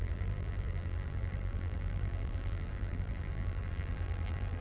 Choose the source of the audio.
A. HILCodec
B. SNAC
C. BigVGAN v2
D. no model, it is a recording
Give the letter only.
C